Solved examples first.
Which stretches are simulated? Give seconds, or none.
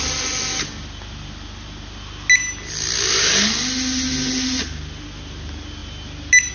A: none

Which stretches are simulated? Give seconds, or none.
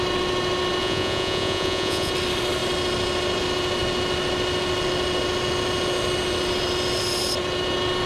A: 0.8-2.1 (vocoder, Vocos)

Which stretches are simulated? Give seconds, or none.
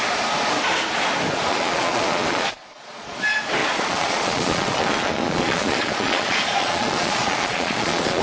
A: 1.5-3.2 (vocoder, Vocos); 3.6-8.2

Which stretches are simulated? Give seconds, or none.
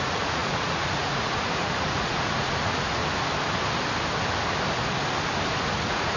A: 0.0-3.0 (vocoder, Vocos); 5.7-6.2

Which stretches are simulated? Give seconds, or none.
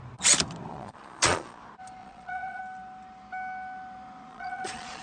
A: 0.7-1.6 (vocoder, Vocos); 2.0-2.6; 4.3-5.0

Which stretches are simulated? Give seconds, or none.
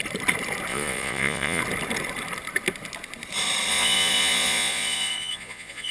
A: 0.7-1.6 (vocoder, Vocos); 3.7-5.9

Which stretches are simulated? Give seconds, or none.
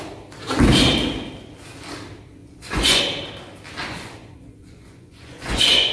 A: 2.4-3.0 (vocoder, Vocos); 3.8-5.9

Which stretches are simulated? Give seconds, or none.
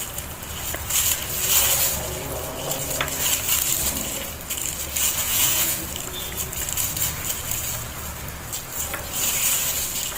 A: 5.2-5.8 (vocoder, Vocos)